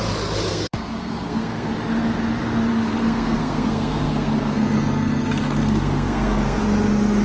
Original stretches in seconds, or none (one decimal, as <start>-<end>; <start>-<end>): 0.0-0.5; 1.7-2.7; 6.6-7.2